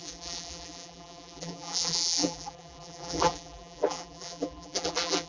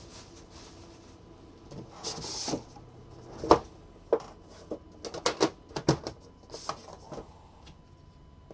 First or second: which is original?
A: second